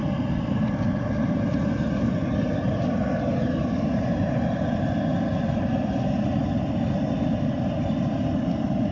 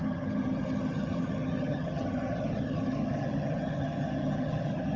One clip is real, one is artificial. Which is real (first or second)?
first